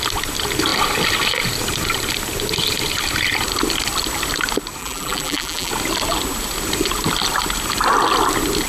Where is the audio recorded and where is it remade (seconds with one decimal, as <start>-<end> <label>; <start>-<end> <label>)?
0.0-4.8 recorded; 4.8-5.7 remade; 5.7-8.7 recorded